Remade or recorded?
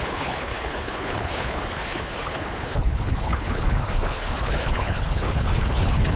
remade